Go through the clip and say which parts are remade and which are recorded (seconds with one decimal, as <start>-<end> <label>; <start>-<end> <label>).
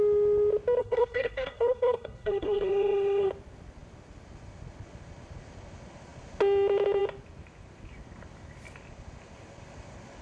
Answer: 0.0-0.8 recorded; 0.8-3.3 remade; 3.3-10.2 recorded